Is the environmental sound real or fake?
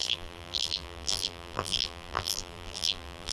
fake